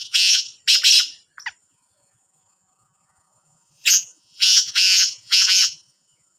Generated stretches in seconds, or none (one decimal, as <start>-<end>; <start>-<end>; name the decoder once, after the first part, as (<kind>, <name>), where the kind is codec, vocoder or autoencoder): 0.0-0.5 (vocoder, Vocos); 1.6-6.4